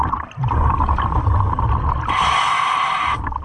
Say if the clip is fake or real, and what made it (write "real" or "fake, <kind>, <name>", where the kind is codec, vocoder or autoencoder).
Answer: real